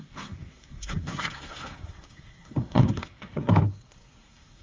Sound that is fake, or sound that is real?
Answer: fake